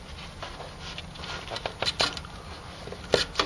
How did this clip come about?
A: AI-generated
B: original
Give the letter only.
B